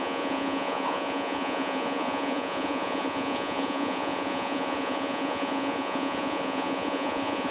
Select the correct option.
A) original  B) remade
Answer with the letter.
B